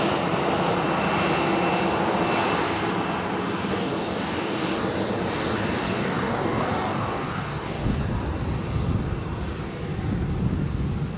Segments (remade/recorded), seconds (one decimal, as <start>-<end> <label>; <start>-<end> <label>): 0.0-3.7 recorded; 3.7-4.8 remade; 4.8-5.8 recorded; 5.8-8.0 remade; 8.0-11.2 recorded